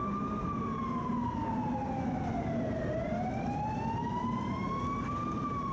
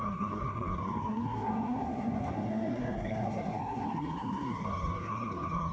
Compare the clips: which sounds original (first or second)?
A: first